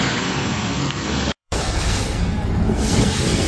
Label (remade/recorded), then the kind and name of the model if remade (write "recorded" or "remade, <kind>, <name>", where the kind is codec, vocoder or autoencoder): remade, codec, SNAC